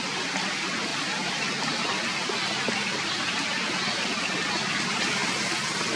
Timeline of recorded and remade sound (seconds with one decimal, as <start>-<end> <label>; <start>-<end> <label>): 0.0-6.0 recorded